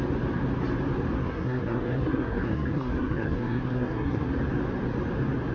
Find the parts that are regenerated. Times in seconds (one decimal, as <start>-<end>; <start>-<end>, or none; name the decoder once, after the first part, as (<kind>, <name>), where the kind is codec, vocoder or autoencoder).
1.2-4.3 (codec, SNAC)